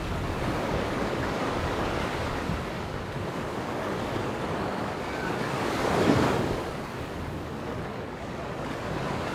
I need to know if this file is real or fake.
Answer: fake